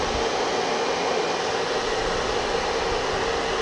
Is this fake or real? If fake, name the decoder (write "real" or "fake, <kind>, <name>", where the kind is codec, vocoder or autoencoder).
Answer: real